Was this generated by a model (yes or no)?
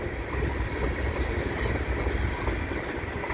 no